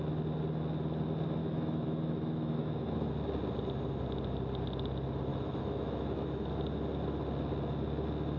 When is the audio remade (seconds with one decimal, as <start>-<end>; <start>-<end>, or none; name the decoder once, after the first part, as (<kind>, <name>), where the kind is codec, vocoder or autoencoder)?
1.4-3.1 (autoencoder, DAC-VAE); 5.3-6.5